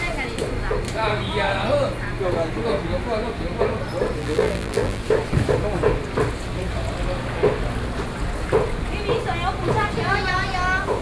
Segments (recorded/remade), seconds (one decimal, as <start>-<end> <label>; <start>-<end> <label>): 0.0-4.2 recorded; 4.2-5.0 remade; 5.0-11.0 recorded